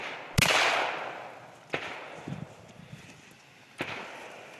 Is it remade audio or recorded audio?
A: recorded